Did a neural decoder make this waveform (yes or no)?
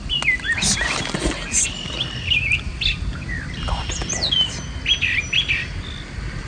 no